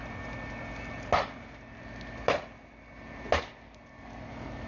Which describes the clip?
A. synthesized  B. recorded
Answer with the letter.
B